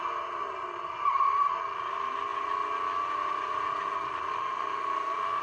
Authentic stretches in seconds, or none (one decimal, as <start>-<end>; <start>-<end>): 0.0-4.3